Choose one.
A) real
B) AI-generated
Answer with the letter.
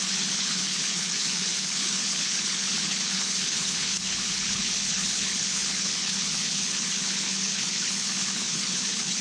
B